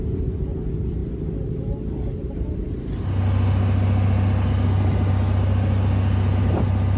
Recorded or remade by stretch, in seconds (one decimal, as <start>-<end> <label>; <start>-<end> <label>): 0.0-7.0 recorded

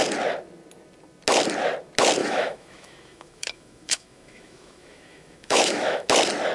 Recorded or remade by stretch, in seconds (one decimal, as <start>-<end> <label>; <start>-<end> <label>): 0.0-2.2 recorded; 2.2-6.1 remade; 6.1-6.5 recorded

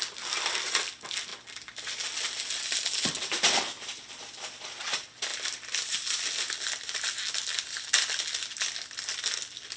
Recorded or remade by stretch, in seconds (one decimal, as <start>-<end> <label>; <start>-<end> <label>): 0.0-9.8 recorded

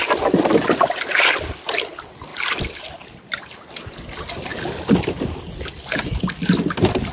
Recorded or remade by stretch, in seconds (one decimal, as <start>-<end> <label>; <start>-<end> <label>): 0.0-7.1 recorded

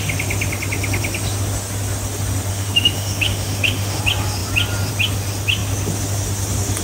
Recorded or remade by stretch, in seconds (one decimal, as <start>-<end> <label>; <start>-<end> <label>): 0.0-2.5 recorded; 2.5-4.0 remade; 4.0-6.8 recorded

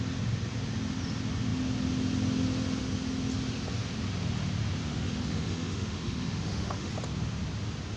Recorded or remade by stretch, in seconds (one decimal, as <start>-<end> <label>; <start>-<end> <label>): 0.0-4.9 recorded; 4.9-6.9 remade; 6.9-8.0 recorded

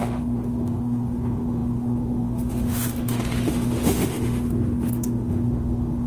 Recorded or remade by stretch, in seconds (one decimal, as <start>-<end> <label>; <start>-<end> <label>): 0.0-6.1 remade

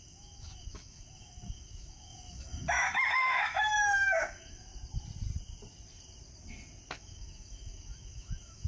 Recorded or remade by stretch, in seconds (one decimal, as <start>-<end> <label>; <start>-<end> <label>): 0.0-4.7 remade; 4.7-6.9 recorded; 6.9-8.7 remade